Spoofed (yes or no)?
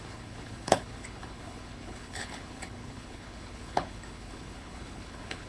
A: yes